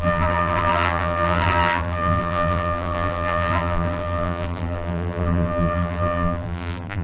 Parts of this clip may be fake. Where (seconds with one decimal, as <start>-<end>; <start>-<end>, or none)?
0.0-7.0